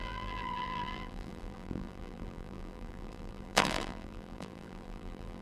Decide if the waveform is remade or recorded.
remade